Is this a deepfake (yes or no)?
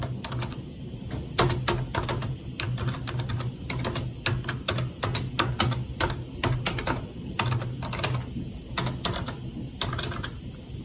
no